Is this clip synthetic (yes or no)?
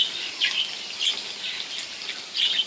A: no